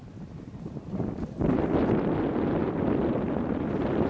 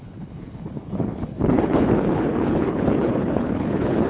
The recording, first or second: first